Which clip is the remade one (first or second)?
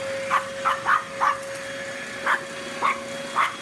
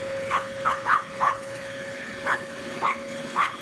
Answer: second